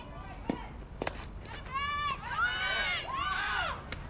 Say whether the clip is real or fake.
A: real